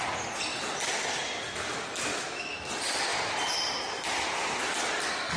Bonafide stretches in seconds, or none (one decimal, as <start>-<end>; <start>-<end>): 0.0-2.1; 2.7-5.4